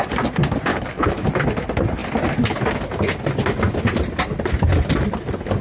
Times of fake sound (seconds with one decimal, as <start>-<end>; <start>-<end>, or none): 0.7-1.3